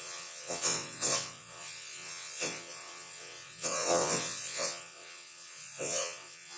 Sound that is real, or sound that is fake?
fake